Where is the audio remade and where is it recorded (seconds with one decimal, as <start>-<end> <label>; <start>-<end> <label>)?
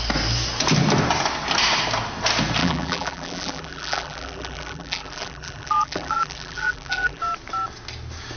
0.0-2.6 recorded; 2.6-7.2 remade; 7.2-8.4 recorded